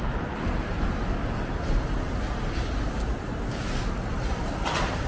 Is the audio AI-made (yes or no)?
no